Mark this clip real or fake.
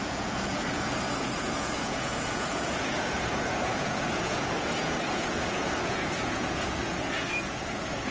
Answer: fake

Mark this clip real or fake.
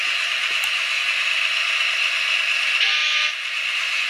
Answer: real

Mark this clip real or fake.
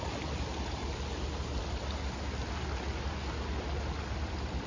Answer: real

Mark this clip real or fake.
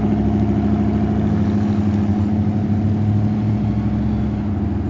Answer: real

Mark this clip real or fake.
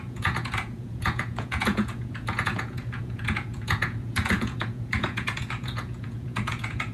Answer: fake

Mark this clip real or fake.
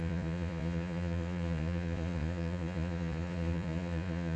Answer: fake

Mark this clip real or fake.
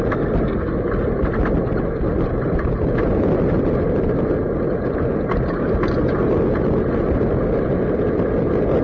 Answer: real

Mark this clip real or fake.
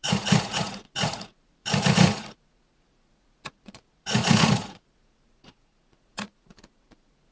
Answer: fake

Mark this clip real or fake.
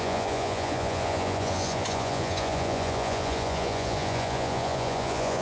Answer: fake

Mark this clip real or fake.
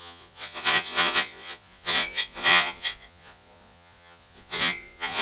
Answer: fake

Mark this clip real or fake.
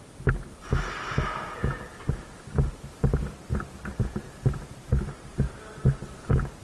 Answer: real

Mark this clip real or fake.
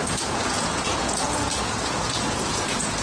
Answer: fake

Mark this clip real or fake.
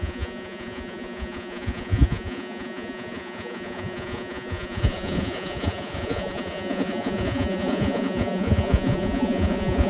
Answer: fake